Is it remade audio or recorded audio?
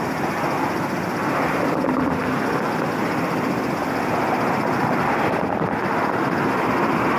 recorded